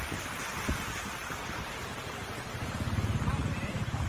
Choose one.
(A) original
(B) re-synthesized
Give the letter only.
A